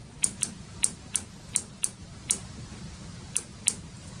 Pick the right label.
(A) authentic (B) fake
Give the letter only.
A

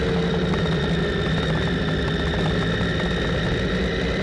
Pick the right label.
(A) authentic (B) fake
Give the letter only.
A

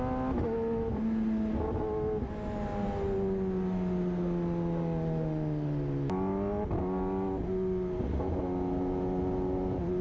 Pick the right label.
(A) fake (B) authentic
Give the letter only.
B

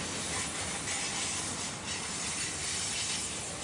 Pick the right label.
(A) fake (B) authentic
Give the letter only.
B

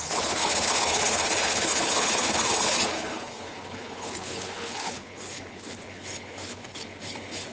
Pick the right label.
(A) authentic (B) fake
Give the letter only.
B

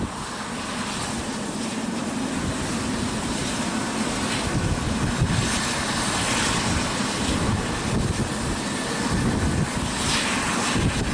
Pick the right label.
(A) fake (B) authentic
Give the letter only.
B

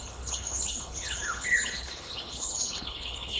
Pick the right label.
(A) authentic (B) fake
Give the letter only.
B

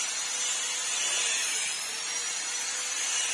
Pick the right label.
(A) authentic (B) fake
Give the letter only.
A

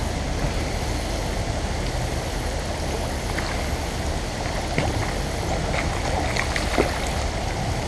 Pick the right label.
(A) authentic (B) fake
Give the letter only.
A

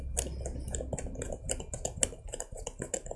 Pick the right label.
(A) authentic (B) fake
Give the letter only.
A